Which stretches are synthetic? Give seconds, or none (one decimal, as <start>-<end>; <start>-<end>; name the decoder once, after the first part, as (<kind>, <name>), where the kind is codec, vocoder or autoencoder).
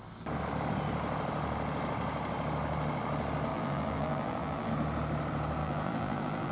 3.5-4.7 (vocoder, BigVGAN v2); 5.6-6.5